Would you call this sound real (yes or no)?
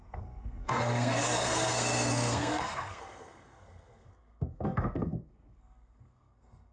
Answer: no